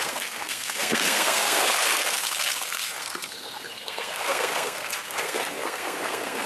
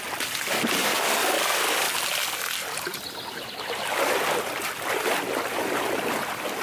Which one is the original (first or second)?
second